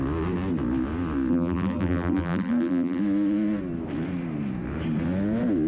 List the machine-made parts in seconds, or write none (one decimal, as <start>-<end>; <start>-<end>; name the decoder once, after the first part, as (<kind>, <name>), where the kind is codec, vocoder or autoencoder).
1.3-3.0 (vocoder, BigVGAN v2)